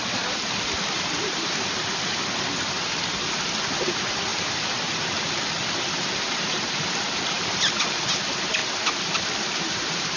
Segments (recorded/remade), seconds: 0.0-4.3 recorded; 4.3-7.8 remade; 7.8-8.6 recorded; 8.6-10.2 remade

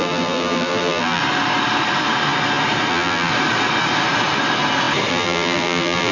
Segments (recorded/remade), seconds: 0.0-1.2 remade; 1.2-2.9 recorded; 2.9-3.3 remade; 3.3-5.1 recorded; 5.1-6.1 remade

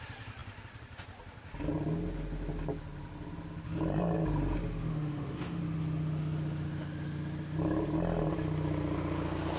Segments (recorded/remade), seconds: 0.0-4.9 recorded; 4.9-5.6 remade; 5.6-9.6 recorded

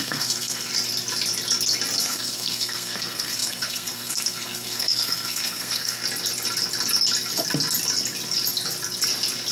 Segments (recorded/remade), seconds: 0.0-0.7 remade; 0.7-2.0 recorded; 2.0-6.0 remade; 6.0-9.5 recorded

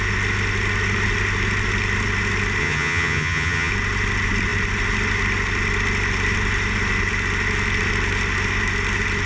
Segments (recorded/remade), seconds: 0.0-2.6 recorded; 2.6-3.7 remade; 3.7-9.3 recorded

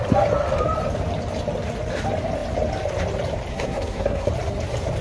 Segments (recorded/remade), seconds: 0.0-3.5 recorded; 3.5-4.3 remade; 4.3-5.0 recorded

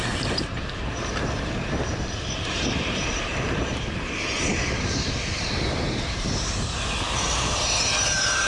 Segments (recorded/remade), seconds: 0.0-3.3 remade; 3.3-4.5 recorded; 4.5-8.5 remade

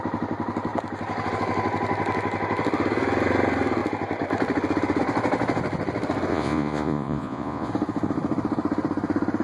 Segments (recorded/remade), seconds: 0.0-6.3 recorded; 6.3-7.7 remade; 7.7-9.4 recorded